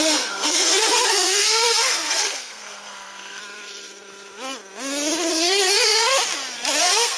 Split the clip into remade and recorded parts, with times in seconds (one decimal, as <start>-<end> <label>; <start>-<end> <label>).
0.0-3.4 remade; 3.4-5.3 recorded; 5.3-6.1 remade; 6.1-6.8 recorded; 6.8-7.2 remade